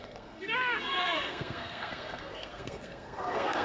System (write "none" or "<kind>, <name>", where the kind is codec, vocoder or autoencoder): codec, SNAC